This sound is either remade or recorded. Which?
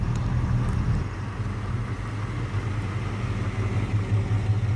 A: recorded